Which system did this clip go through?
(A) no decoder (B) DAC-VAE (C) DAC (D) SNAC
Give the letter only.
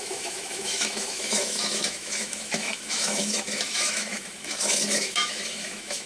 B